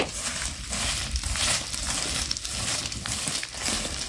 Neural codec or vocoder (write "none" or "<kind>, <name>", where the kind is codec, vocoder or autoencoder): none